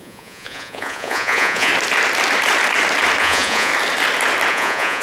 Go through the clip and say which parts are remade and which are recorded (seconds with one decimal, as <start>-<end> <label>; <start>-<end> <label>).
0.0-1.7 remade; 1.7-3.2 recorded; 3.2-3.7 remade; 3.7-4.5 recorded; 4.5-5.0 remade